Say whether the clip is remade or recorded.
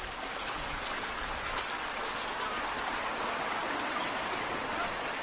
recorded